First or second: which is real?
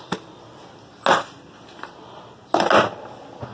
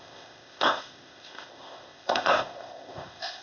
first